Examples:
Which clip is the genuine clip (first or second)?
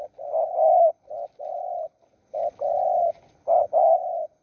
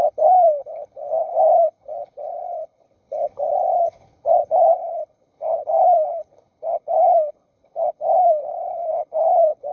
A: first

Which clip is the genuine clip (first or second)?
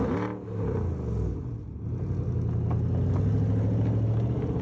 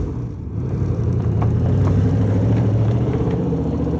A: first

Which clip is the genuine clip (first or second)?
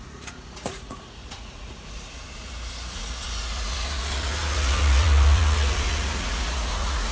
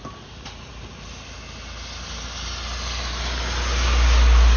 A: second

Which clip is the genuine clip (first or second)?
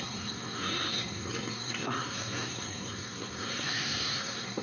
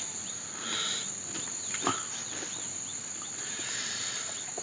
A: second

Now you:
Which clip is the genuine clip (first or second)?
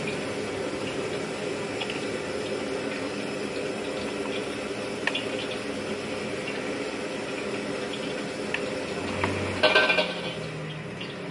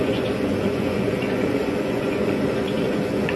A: first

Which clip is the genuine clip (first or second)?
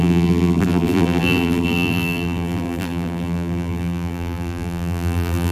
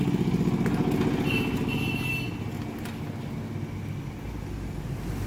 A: second